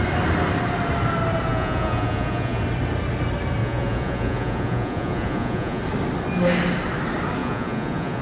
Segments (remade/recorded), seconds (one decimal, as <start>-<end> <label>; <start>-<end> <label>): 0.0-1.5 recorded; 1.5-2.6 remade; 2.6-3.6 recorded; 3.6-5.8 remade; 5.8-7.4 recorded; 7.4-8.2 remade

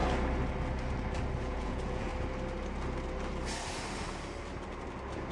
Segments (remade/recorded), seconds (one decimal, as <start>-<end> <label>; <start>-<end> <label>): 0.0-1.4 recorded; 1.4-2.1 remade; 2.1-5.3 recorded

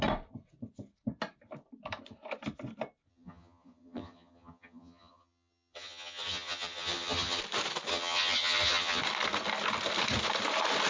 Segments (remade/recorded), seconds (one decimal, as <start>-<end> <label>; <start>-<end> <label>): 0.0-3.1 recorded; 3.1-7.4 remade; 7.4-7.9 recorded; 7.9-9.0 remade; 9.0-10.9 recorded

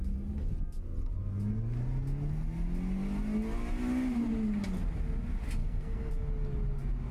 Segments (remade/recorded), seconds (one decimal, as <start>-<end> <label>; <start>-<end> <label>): 0.0-5.6 recorded; 5.6-6.1 remade; 6.1-7.1 recorded

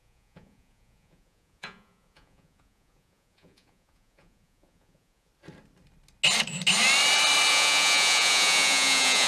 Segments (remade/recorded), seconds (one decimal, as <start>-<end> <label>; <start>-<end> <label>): 0.0-5.3 remade; 5.3-7.5 recorded; 7.5-9.3 remade